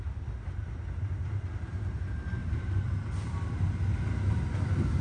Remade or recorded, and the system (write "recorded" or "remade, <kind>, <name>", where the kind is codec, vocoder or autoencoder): recorded